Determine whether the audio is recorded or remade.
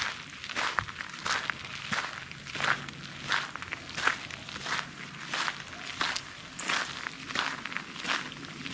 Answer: recorded